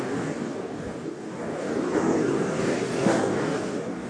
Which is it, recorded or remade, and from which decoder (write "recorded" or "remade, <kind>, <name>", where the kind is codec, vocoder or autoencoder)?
remade, codec, DAC